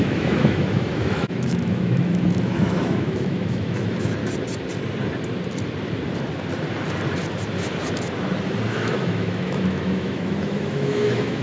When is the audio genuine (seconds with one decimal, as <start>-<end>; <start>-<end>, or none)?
4.2-8.7